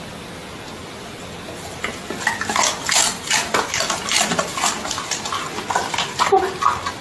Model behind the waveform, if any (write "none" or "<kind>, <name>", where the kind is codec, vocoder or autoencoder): none